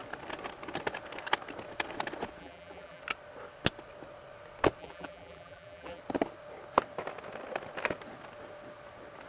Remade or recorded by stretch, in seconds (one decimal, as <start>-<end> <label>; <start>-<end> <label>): 0.0-2.4 recorded; 2.4-3.0 remade; 3.0-4.8 recorded; 4.8-6.0 remade; 6.0-9.3 recorded